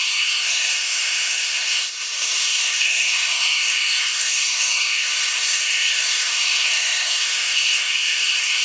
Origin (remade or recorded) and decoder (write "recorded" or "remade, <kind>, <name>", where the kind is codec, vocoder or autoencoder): remade, codec, SNAC